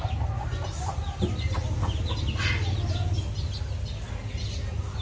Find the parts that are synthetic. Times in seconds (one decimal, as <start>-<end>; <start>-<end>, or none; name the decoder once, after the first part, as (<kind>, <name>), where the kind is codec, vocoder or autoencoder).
none